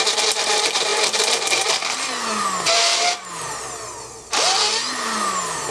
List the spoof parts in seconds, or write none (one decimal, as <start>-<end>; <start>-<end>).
none